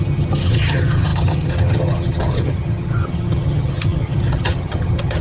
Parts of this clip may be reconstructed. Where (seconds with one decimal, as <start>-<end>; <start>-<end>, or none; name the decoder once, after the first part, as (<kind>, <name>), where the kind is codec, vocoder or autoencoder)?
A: 0.0-5.2 (vocoder, HiFi-GAN)